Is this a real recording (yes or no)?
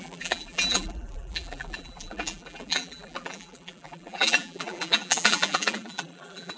no